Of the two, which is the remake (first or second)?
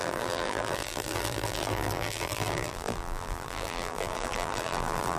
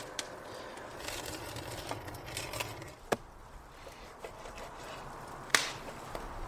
first